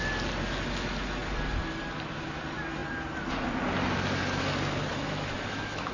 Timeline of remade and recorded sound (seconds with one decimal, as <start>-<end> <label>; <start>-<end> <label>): 0.0-4.9 recorded; 4.9-5.9 remade